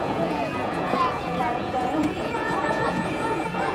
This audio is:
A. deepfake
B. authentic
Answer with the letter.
A